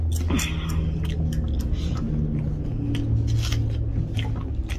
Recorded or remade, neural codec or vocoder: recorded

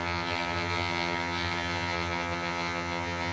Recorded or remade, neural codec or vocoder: remade, vocoder, HiFi-GAN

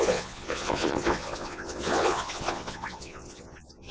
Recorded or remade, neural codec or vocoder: remade, vocoder, Vocos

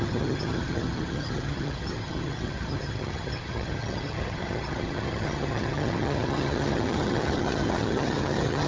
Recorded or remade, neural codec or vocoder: remade, vocoder, HiFi-GAN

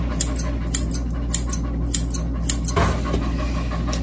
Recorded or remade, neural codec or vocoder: recorded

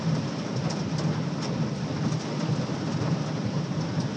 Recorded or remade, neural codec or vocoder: remade, vocoder, BigVGAN v2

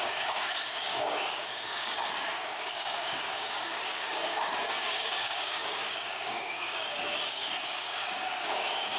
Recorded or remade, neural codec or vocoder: remade, codec, DAC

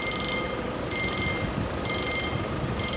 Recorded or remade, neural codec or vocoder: recorded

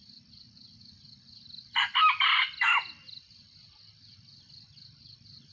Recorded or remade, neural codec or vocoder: recorded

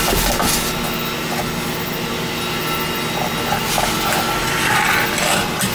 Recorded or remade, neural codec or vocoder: recorded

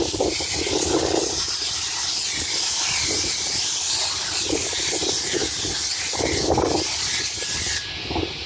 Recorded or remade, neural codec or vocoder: recorded